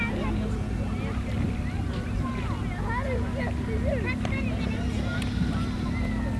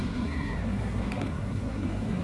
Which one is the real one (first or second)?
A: first